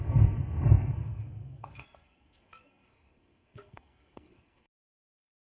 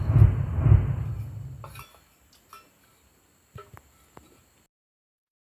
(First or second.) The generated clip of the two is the first